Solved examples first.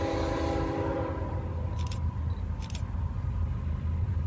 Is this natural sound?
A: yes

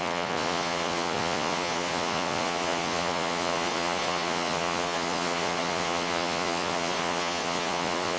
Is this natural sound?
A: no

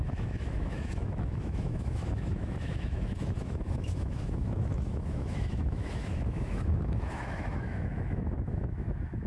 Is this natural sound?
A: no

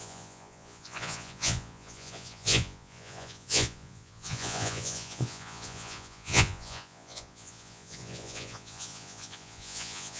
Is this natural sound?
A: no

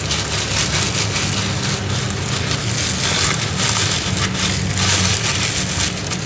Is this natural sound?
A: yes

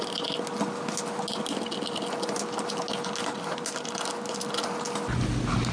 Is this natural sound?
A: yes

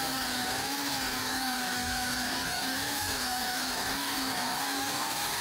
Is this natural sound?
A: no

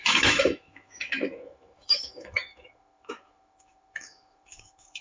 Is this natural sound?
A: no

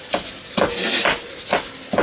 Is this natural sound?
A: yes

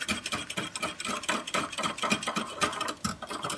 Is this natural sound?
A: yes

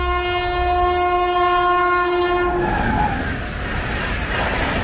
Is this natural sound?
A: yes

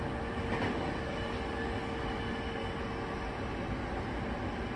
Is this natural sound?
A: yes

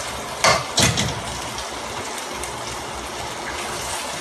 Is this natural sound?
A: yes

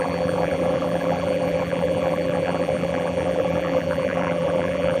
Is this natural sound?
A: no